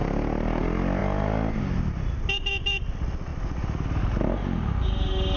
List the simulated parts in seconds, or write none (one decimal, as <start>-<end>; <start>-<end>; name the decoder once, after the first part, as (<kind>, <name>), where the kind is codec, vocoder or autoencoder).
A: none